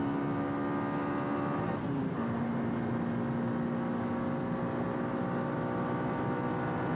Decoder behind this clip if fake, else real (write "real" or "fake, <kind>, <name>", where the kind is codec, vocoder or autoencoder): real